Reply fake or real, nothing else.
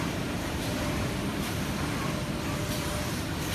fake